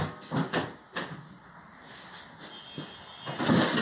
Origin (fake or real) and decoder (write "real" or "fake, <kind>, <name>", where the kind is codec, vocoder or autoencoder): real